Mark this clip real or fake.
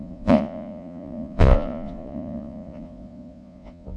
fake